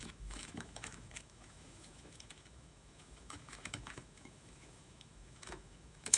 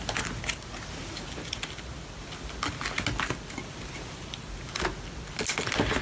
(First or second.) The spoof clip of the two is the first